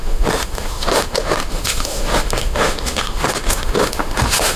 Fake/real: fake